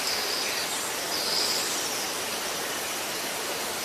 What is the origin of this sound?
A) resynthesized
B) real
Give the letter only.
B